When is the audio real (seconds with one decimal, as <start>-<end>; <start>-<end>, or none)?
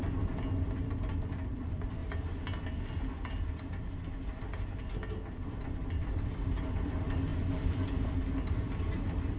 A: 0.0-1.5; 2.0-5.9; 7.3-8.1